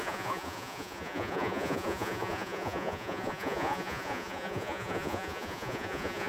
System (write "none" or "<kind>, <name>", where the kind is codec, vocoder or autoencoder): vocoder, Vocos